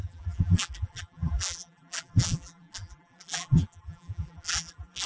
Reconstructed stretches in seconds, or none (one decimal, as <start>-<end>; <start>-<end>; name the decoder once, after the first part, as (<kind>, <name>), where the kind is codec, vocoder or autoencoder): 0.0-5.1 (vocoder, BigVGAN v2)